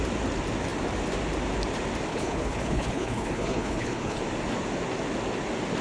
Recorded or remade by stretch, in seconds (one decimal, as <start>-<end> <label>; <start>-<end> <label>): 0.0-2.1 recorded; 2.1-4.2 remade; 4.2-5.8 recorded